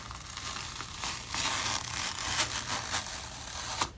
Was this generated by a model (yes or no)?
no